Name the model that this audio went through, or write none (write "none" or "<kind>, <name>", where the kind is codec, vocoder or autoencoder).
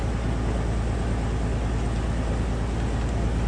none